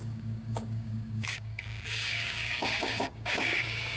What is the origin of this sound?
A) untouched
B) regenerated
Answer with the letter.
B